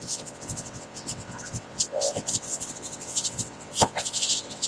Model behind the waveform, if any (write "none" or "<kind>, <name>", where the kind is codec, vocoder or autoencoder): vocoder, WaveNeXt